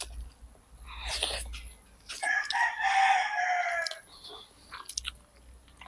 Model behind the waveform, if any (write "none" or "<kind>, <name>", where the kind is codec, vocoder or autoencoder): none